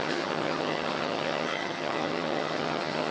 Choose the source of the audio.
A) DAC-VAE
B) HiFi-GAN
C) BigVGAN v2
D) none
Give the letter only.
B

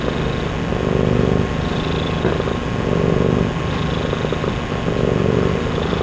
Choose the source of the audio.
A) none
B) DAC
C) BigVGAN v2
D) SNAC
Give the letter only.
A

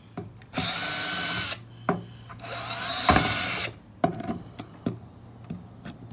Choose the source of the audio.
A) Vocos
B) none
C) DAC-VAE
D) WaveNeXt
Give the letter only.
B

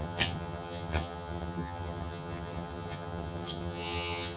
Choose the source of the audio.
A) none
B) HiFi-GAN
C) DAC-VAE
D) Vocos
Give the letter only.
B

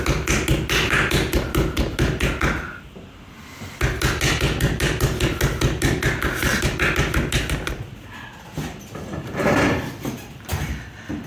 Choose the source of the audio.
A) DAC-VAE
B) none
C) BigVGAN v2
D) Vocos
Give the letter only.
B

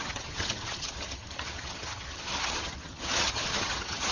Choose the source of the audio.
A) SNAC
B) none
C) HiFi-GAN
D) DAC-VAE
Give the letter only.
C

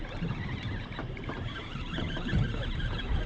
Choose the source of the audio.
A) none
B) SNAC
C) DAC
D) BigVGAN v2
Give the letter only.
D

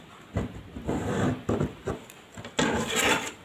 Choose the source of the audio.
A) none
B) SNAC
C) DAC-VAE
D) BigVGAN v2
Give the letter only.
A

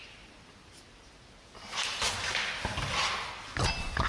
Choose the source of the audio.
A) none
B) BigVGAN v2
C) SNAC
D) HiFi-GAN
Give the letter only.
A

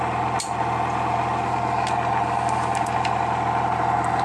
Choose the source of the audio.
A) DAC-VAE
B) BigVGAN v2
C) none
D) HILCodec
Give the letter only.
C